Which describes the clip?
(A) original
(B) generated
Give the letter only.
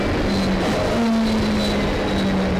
A